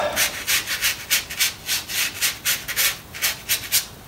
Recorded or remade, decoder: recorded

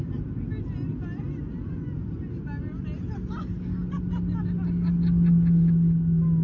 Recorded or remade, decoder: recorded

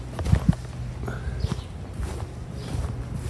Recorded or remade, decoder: recorded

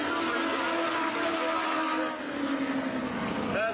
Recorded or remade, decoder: recorded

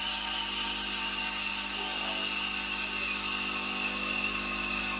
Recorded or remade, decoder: recorded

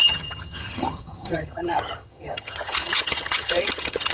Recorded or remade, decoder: remade, vocoder, HiFi-GAN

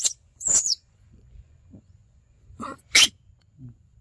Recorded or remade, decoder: remade, vocoder, Vocos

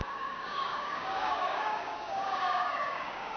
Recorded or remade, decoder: remade, codec, DAC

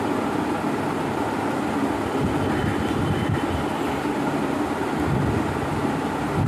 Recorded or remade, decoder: recorded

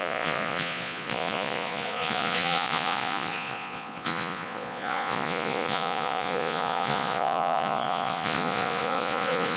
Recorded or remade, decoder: remade, vocoder, Vocos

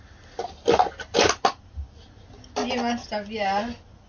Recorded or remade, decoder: recorded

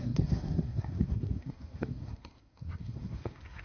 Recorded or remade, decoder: remade, codec, SNAC